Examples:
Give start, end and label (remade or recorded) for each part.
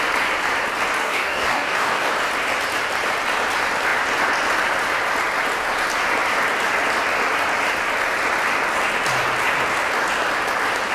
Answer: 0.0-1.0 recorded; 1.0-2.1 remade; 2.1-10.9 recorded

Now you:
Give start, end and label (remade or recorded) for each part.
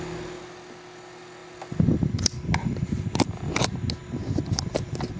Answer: 0.0-5.2 recorded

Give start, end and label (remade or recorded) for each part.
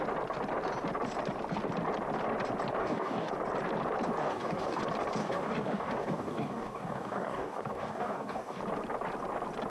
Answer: 0.0-2.8 recorded; 2.8-3.3 remade; 3.3-4.2 recorded; 4.2-4.8 remade; 4.8-5.2 recorded; 5.2-8.6 remade; 8.6-9.7 recorded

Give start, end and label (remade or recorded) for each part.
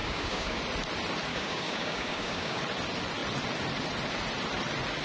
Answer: 0.0-0.6 remade; 0.6-1.3 recorded; 1.3-2.6 remade; 2.6-5.0 recorded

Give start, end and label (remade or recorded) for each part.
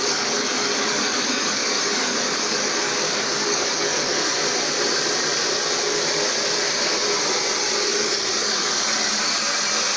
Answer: 0.0-4.2 remade; 4.2-8.0 recorded; 8.0-8.7 remade; 8.7-10.0 recorded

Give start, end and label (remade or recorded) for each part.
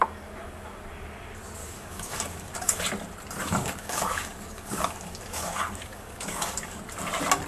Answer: 0.0-1.6 recorded; 1.6-2.8 remade; 2.8-3.4 recorded; 3.4-6.8 remade; 6.8-7.5 recorded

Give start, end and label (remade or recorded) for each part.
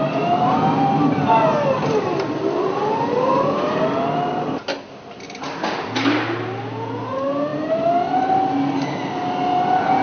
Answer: 0.0-10.0 recorded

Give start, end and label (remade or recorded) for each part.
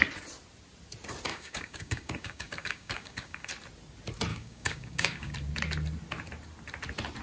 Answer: 0.0-1.3 recorded; 1.3-3.5 remade; 3.5-4.3 recorded; 4.3-5.3 remade; 5.3-7.2 recorded